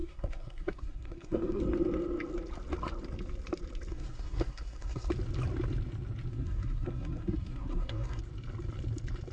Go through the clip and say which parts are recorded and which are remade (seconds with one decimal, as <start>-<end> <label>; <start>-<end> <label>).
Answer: 0.0-1.6 remade; 1.6-3.9 recorded; 3.9-5.1 remade; 5.1-6.3 recorded; 6.3-8.2 remade; 8.2-9.3 recorded